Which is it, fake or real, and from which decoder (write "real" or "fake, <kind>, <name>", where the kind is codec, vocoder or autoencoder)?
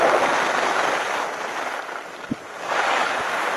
real